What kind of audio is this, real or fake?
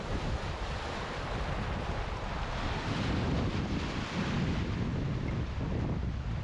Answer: real